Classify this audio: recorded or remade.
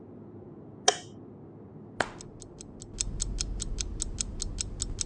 recorded